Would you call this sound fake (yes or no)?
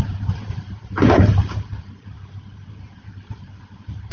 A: yes